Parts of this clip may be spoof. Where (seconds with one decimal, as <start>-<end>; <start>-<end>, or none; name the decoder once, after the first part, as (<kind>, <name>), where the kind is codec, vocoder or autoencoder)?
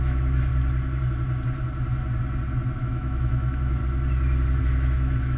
0.0-0.5 (autoencoder, DAC-VAE); 2.8-3.8; 4.6-5.4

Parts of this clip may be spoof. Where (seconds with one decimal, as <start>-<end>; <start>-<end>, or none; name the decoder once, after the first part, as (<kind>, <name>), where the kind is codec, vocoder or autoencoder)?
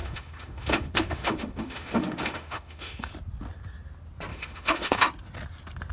0.0-3.1 (autoencoder, DAC-VAE); 4.3-5.1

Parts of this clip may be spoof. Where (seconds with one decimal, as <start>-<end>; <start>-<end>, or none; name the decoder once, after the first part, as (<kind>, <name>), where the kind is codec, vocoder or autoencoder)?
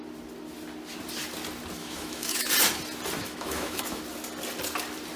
1.8-2.5 (autoencoder, DAC-VAE); 3.2-4.0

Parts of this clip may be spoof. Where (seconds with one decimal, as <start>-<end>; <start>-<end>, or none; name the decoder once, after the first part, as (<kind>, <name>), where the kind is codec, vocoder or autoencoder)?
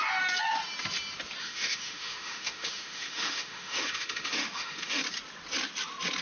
1.4-5.0 (autoencoder, DAC-VAE)